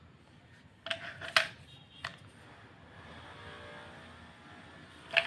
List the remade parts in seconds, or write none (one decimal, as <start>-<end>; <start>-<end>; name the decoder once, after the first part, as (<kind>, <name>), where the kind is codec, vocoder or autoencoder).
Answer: none